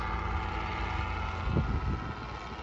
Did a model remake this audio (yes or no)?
no